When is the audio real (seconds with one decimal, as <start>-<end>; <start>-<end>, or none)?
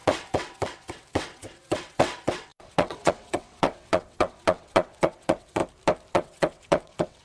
5.6-6.1